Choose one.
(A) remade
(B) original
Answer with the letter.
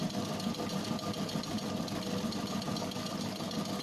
B